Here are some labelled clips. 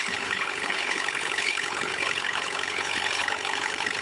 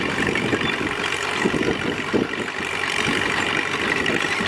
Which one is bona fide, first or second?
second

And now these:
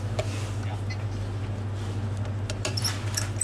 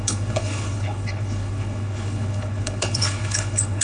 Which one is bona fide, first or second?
first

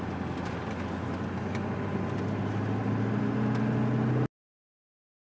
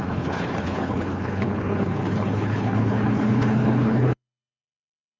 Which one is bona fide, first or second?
first